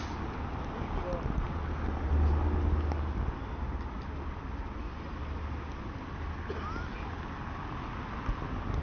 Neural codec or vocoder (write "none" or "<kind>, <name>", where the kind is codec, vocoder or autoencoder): none